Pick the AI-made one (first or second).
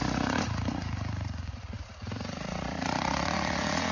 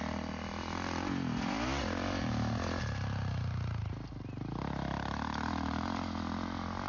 first